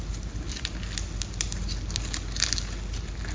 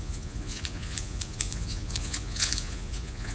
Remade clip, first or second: second